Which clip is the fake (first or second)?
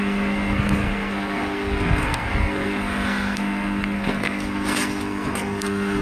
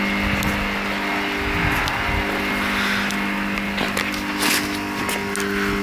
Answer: first